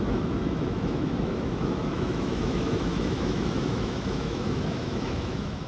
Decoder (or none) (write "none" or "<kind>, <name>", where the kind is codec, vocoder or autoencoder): autoencoder, DAC-VAE